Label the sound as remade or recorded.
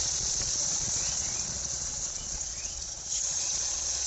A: remade